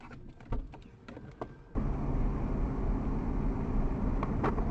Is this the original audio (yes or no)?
yes